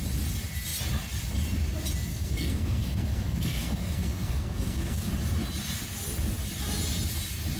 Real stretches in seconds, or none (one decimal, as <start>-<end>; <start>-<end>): 0.0-2.1; 5.1-7.6